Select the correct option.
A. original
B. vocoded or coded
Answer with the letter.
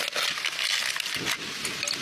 A